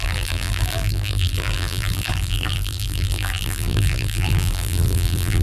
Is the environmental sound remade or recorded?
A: remade